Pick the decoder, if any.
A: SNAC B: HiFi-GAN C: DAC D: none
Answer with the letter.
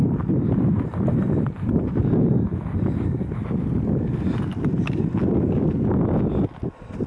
D